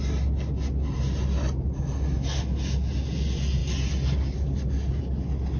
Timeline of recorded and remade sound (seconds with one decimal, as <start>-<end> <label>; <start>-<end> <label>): 0.0-5.6 recorded

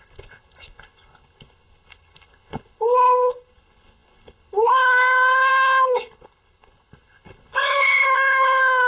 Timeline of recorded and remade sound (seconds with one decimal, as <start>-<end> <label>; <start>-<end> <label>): 0.0-8.9 remade

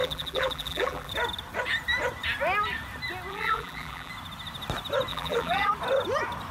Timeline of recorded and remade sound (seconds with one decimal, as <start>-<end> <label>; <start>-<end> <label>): 0.0-1.1 remade; 1.1-3.3 recorded; 3.3-4.1 remade; 4.1-5.1 recorded; 5.1-5.7 remade; 5.7-6.5 recorded

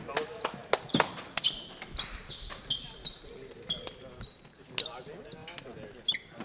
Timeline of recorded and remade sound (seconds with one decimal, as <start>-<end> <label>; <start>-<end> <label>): 0.0-6.4 recorded

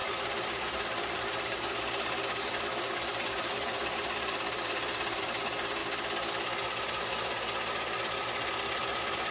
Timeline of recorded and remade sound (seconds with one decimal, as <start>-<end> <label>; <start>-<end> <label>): 0.0-5.2 remade; 5.2-9.3 recorded

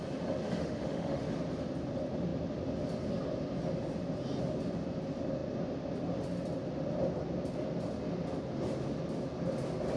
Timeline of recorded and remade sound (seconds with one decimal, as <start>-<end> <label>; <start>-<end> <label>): 0.0-0.6 recorded; 0.6-1.2 remade; 1.2-10.0 recorded